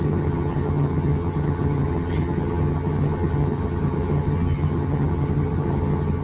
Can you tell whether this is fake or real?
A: fake